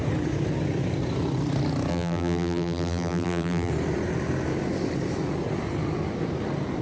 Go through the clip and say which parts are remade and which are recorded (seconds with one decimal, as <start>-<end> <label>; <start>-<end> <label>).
0.0-1.9 recorded; 1.9-3.7 remade; 3.7-6.8 recorded